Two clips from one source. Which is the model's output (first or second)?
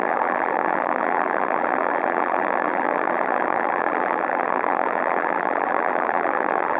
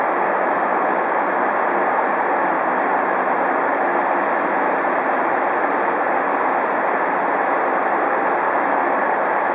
first